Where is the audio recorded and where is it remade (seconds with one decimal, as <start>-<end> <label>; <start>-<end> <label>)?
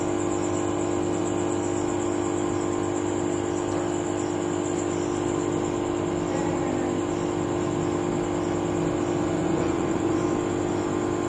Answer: 0.0-9.4 recorded; 9.4-10.0 remade; 10.0-11.3 recorded